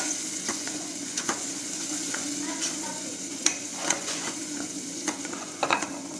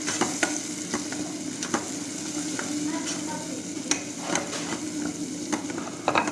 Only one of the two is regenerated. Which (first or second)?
first